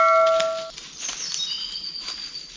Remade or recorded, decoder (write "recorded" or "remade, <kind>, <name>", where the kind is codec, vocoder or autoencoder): recorded